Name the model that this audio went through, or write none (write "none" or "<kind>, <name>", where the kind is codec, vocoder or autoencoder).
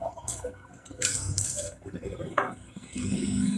codec, SNAC